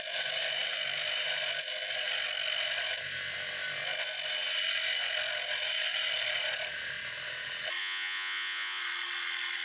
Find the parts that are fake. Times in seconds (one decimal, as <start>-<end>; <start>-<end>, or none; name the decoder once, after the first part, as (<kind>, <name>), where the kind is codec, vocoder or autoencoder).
7.8-8.8 (vocoder, Vocos)